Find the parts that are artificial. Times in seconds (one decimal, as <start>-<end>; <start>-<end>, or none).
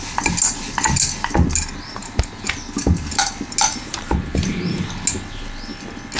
3.7-4.8